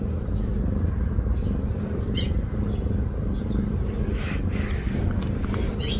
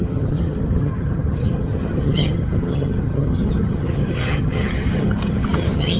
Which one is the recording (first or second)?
first